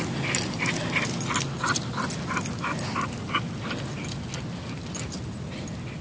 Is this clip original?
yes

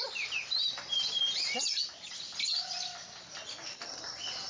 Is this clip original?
yes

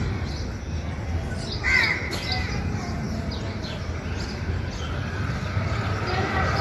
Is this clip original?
yes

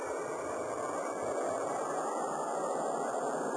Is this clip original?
yes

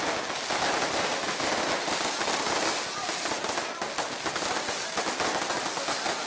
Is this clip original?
yes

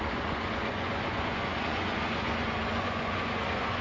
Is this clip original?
no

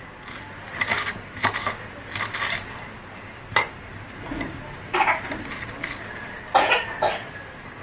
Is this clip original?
yes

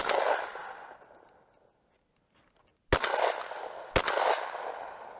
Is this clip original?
yes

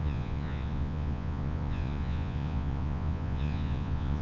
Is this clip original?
no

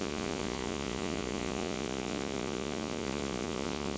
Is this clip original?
no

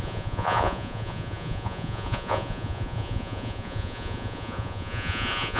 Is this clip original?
no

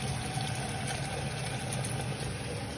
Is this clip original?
yes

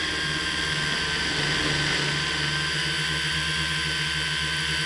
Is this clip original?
yes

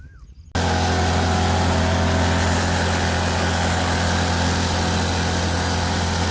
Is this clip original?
yes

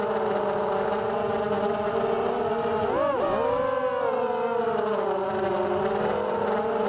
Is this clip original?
yes